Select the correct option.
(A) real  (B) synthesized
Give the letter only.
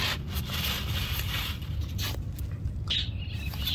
A